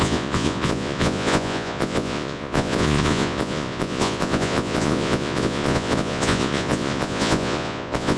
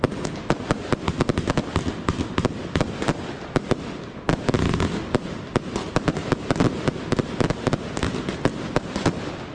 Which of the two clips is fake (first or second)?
first